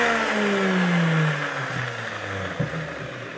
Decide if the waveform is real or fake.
real